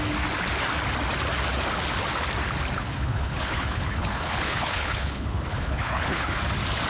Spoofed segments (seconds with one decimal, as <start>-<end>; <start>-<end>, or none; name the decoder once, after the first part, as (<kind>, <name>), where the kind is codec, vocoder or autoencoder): 2.8-6.4 (codec, HILCodec)